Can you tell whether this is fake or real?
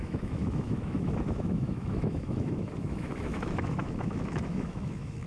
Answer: fake